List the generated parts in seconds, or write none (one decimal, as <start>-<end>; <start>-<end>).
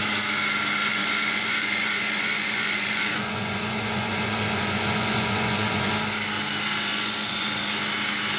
0.9-5.9; 6.9-7.6